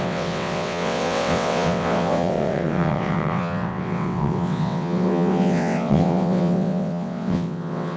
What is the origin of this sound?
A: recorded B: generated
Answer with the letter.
B